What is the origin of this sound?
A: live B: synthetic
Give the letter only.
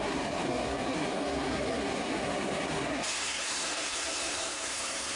B